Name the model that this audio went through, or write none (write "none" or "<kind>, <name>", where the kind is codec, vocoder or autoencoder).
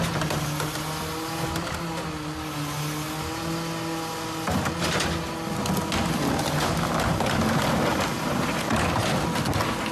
none